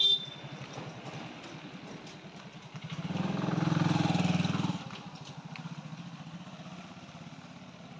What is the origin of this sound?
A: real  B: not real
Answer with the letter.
A